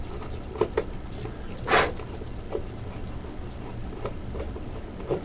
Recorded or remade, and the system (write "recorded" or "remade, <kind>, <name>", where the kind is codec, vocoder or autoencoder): recorded